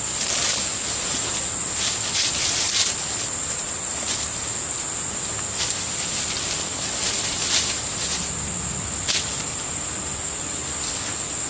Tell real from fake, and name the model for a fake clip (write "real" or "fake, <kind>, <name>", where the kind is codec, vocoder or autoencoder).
real